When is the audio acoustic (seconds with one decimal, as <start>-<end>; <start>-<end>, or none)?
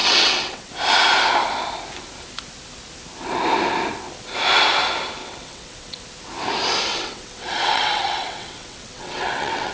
0.7-5.2; 6.0-6.9